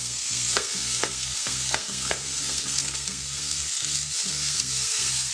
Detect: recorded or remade remade